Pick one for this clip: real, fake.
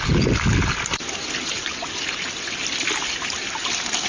real